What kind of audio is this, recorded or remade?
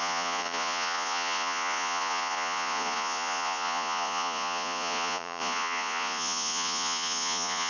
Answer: remade